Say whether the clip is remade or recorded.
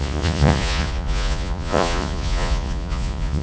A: remade